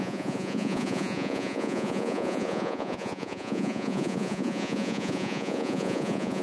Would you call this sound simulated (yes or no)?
yes